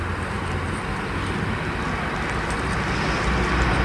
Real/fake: real